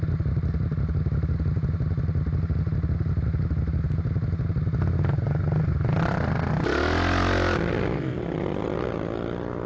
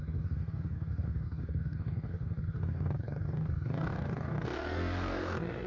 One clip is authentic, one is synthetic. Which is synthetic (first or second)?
second